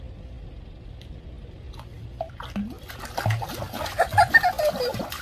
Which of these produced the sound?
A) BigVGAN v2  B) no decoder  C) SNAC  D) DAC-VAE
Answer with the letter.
B